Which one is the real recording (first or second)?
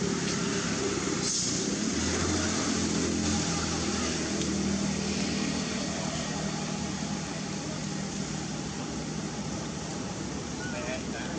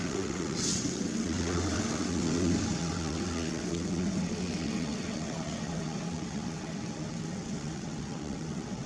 first